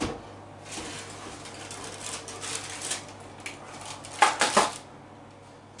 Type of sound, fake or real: real